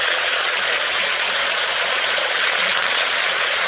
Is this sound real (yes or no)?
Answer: no